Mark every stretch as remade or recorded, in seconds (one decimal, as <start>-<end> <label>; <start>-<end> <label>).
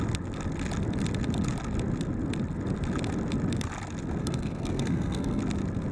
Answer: 0.0-4.2 recorded; 4.2-5.4 remade; 5.4-5.9 recorded